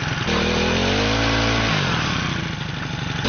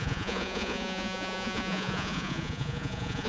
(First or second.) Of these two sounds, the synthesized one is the second